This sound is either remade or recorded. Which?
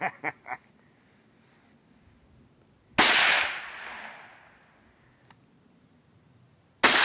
recorded